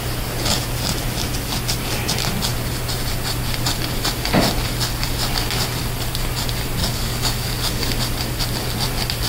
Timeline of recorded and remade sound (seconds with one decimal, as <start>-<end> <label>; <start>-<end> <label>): 0.0-6.8 recorded; 6.8-7.9 remade; 7.9-9.3 recorded